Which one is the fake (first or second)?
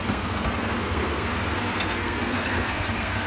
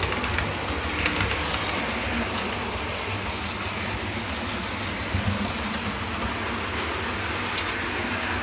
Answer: first